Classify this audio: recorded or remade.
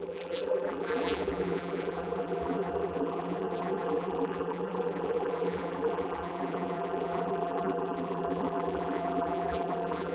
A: remade